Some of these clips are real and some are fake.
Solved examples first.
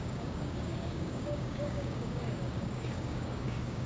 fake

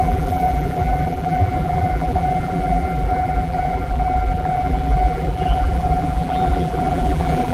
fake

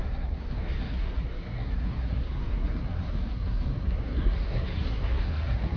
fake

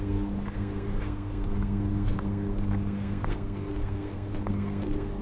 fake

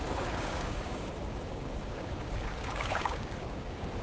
fake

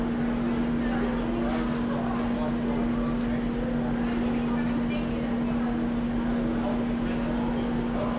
real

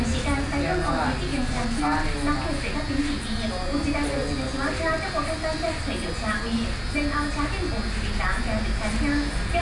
real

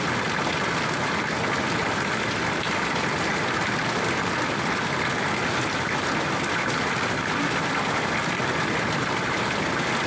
real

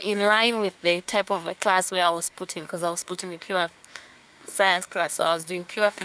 fake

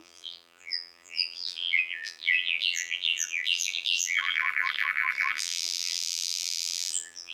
fake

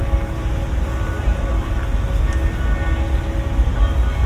real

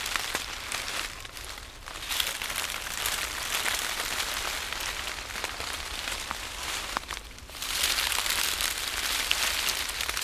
real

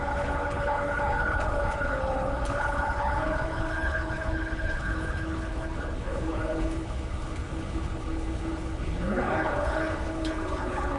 fake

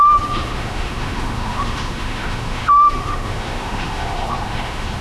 fake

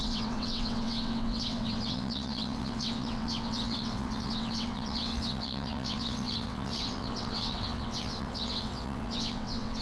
fake